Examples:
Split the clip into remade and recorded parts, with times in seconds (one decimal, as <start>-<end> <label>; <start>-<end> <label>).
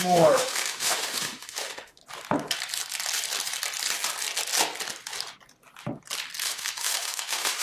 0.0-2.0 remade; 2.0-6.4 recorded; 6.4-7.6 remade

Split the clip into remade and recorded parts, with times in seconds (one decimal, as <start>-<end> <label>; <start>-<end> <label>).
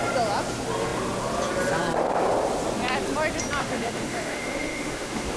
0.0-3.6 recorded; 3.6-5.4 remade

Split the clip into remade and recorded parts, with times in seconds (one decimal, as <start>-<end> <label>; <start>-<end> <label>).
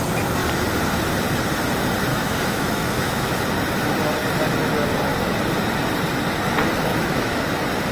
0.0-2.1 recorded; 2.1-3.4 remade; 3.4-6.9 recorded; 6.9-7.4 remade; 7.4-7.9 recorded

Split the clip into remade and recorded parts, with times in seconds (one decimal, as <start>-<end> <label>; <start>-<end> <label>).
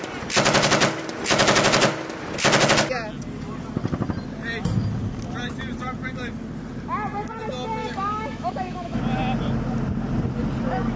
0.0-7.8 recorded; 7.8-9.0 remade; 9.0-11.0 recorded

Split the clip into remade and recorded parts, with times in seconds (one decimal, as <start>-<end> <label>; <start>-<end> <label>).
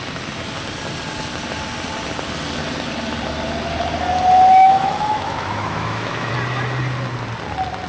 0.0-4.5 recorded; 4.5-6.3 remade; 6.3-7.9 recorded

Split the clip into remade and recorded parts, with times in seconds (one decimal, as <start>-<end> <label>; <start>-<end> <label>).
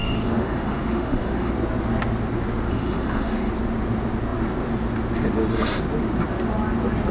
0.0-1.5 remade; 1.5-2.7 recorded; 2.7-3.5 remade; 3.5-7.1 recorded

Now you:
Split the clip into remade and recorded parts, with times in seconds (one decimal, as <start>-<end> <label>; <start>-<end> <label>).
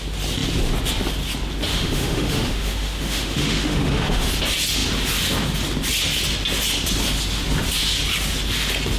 0.0-1.7 recorded; 1.7-4.3 remade; 4.3-9.0 recorded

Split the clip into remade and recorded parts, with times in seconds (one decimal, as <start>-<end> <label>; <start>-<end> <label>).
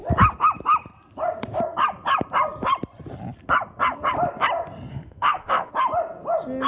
0.0-4.9 recorded; 4.9-5.7 remade; 5.7-6.7 recorded